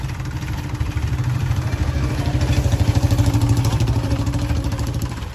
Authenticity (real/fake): fake